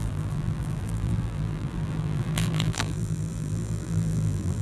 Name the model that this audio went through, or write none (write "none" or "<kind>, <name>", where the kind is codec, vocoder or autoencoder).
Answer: vocoder, BigVGAN v2